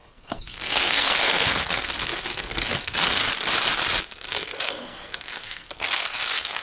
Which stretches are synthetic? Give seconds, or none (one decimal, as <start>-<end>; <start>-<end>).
0.0-3.2; 4.0-6.6